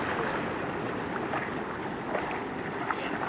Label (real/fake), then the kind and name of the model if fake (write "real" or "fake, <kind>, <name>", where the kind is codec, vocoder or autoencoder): real